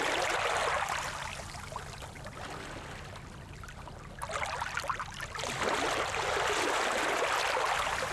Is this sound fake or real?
real